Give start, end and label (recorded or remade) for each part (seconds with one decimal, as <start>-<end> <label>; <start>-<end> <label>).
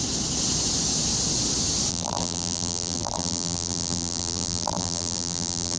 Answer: 0.0-1.9 recorded; 1.9-5.8 remade